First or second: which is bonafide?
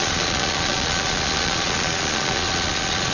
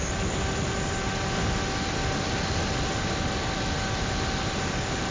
second